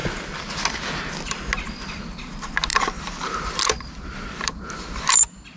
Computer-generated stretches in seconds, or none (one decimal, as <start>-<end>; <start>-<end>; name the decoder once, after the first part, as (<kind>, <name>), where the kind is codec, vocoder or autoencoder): 2.7-4.7 (vocoder, BigVGAN v2)